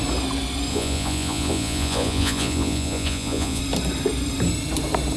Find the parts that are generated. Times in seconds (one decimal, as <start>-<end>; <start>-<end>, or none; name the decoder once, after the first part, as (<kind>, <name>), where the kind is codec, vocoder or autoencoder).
0.7-3.6 (vocoder, Vocos)

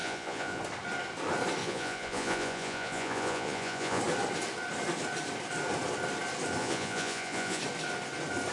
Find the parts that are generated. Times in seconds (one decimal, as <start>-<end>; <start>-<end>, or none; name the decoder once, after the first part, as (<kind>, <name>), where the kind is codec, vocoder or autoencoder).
0.0-0.6 (vocoder, Vocos); 1.6-4.0; 6.6-7.6

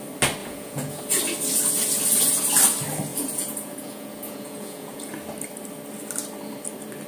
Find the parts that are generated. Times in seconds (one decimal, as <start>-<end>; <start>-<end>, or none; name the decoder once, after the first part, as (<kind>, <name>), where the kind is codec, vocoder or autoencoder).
0.4-1.0 (vocoder, Vocos); 3.1-5.1

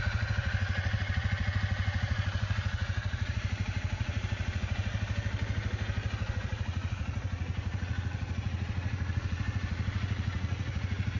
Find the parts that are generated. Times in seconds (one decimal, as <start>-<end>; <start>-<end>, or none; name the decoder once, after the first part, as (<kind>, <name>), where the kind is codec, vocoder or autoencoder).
0.0-4.9 (vocoder, Vocos); 6.3-11.2

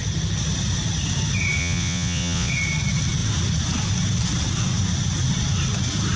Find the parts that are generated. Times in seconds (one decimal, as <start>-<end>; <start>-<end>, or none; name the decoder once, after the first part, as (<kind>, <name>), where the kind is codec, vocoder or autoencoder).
1.6-2.5 (vocoder, Vocos)

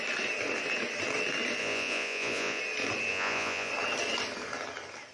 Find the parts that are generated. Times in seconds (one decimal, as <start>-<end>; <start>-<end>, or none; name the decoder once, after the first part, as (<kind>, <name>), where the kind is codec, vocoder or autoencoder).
1.6-2.6 (vocoder, Vocos); 3.1-3.7

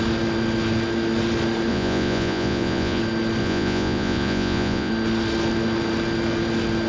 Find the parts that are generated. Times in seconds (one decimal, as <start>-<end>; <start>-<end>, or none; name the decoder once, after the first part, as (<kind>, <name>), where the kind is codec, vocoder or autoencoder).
1.7-3.0 (vocoder, Vocos); 3.4-4.9